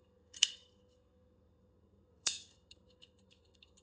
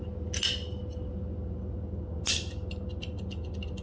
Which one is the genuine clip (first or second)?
second